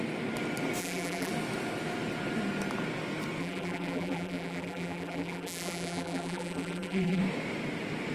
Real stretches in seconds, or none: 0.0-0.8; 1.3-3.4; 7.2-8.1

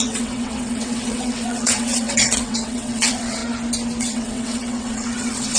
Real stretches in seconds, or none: 3.4-4.0

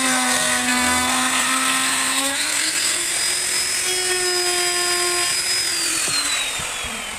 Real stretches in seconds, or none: 3.1-7.2

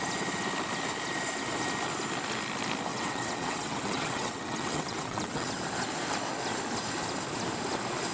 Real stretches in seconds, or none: 0.0-2.9; 5.5-8.1